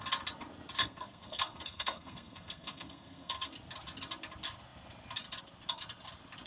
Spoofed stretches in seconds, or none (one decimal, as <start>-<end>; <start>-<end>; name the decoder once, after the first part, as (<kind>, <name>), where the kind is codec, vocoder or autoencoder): 0.8-3.5 (codec, SNAC)